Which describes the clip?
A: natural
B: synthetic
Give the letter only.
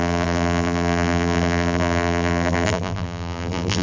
B